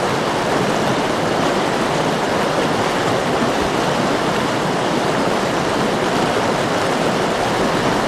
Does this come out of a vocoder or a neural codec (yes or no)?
no